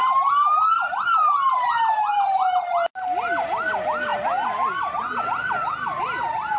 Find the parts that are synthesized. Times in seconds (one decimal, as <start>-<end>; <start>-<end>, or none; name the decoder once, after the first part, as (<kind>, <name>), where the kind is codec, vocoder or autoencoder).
none

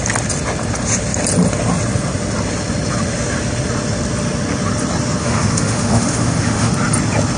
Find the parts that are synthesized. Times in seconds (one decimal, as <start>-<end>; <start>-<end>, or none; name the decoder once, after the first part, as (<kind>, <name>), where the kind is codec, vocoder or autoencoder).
5.2-6.7 (autoencoder, DAC-VAE)